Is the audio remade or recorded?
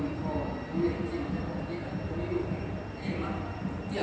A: remade